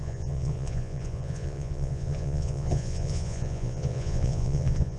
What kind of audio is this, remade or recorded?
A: remade